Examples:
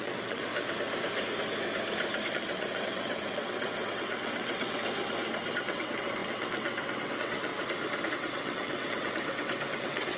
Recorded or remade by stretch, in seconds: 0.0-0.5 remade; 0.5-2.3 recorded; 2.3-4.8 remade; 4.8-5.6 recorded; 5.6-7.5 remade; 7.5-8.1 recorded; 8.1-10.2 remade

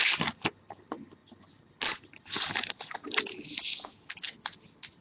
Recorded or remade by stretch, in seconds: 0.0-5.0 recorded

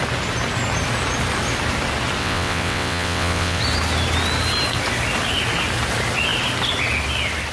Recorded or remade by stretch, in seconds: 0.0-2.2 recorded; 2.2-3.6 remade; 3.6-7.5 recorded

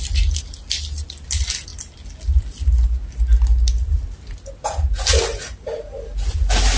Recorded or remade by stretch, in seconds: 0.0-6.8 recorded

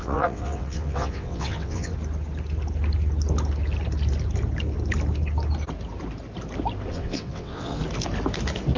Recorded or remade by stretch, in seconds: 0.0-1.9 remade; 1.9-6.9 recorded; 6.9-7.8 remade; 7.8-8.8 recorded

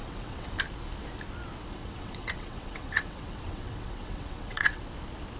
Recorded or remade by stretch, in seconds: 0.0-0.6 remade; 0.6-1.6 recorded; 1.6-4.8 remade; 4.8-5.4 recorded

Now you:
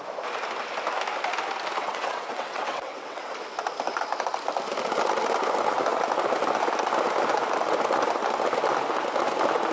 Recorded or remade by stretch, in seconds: 0.0-1.8 recorded; 1.8-3.3 remade; 3.3-9.7 recorded

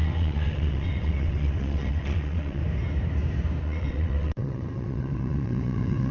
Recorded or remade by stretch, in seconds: 0.0-2.6 remade; 2.6-3.6 recorded; 3.6-6.1 remade